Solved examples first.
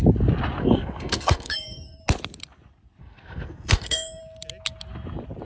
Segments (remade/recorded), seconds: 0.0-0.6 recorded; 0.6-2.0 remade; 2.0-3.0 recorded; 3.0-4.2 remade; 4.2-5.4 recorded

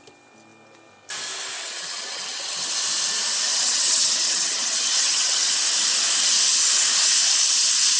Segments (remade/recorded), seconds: 0.0-1.6 recorded; 1.6-2.7 remade; 2.7-3.5 recorded; 3.5-5.5 remade; 5.5-8.0 recorded

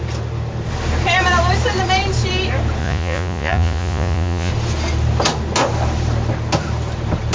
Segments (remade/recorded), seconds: 0.0-2.8 recorded; 2.8-4.5 remade; 4.5-7.3 recorded

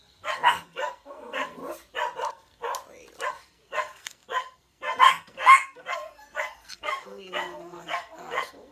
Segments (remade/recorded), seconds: 0.0-1.6 remade; 1.6-2.3 recorded; 2.3-2.7 remade; 2.7-3.3 recorded; 3.3-8.7 remade

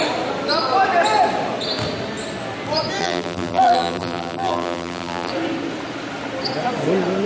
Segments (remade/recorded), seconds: 0.0-3.0 recorded; 3.0-5.3 remade; 5.3-7.3 recorded

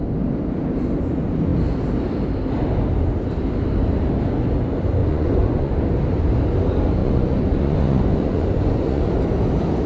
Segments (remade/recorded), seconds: 0.0-5.0 recorded; 5.0-5.7 remade; 5.7-7.0 recorded; 7.0-9.1 remade; 9.1-9.9 recorded